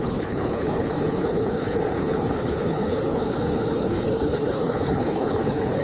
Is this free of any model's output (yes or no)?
no